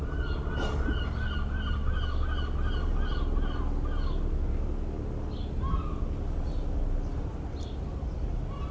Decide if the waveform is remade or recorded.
recorded